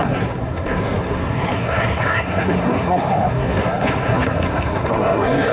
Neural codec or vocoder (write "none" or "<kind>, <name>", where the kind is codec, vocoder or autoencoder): codec, SNAC